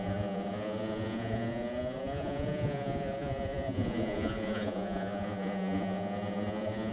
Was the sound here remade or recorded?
remade